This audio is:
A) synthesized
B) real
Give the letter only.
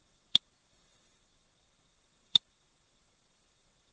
A